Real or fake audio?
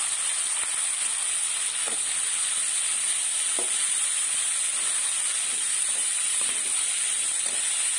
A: real